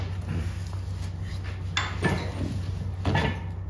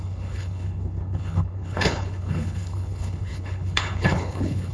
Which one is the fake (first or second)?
second